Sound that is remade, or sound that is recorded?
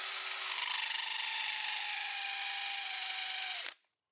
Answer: recorded